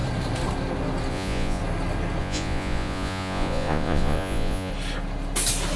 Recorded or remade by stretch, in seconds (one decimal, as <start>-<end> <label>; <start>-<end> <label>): 0.0-1.1 recorded; 1.1-1.6 remade; 1.6-2.2 recorded; 2.2-4.7 remade; 4.7-5.8 recorded